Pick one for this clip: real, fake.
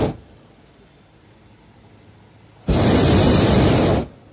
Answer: real